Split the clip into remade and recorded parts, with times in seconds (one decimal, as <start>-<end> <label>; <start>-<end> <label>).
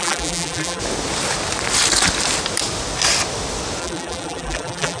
0.0-0.8 remade; 0.8-3.8 recorded; 3.8-5.0 remade